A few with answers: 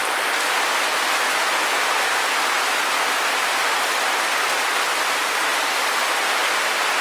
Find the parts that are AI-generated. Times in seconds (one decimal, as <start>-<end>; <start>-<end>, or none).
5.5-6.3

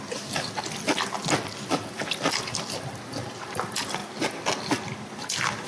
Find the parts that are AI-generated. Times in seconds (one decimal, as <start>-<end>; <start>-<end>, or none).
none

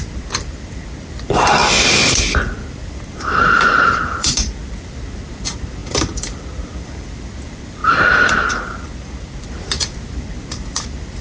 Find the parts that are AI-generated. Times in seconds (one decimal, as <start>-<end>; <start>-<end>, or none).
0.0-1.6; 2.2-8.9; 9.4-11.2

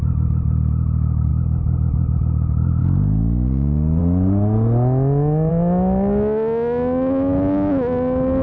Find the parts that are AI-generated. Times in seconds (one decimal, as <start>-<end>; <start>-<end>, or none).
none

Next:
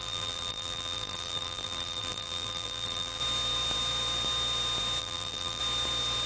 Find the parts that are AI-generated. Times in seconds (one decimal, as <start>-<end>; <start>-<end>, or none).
0.0-3.2; 5.0-5.6